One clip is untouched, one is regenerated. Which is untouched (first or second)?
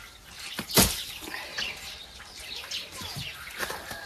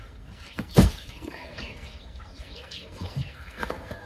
first